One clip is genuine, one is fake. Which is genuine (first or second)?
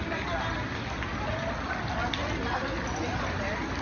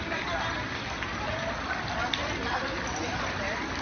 first